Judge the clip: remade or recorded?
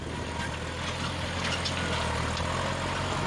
recorded